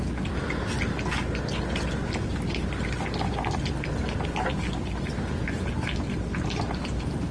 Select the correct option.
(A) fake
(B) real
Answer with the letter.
B